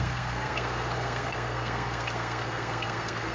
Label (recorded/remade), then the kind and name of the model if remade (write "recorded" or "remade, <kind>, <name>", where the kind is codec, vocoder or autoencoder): remade, codec, SNAC